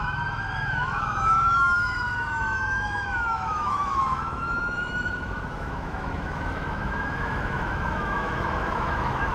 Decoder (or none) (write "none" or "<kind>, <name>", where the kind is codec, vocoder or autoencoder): autoencoder, DAC-VAE